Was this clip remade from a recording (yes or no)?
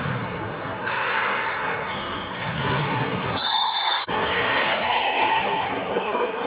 yes